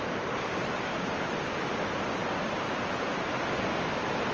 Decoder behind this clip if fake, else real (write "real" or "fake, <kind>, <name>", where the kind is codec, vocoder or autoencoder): real